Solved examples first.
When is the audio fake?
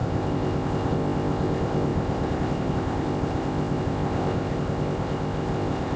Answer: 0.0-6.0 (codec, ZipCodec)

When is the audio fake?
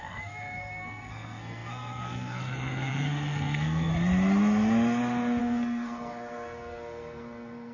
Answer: 0.0-3.9 (codec, SNAC); 5.4-7.7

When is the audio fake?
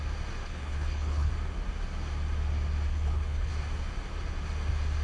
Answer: 0.4-1.3 (codec, HILCodec); 2.9-3.5